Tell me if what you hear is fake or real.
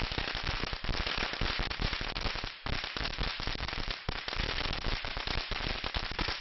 real